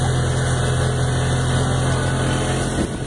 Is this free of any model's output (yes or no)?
yes